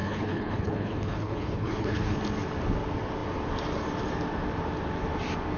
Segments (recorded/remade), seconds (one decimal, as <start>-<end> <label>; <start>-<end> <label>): 0.0-2.2 remade; 2.2-5.6 recorded